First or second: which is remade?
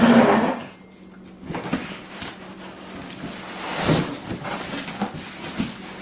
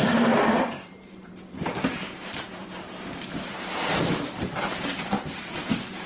second